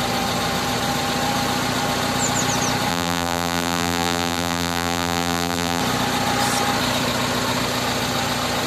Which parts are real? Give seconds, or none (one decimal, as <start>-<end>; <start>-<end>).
0.0-2.9; 5.8-8.7